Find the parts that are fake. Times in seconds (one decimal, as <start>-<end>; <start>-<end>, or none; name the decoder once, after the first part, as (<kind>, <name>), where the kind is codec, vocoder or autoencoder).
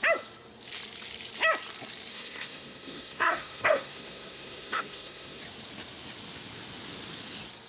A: 2.1-5.4 (codec, SNAC)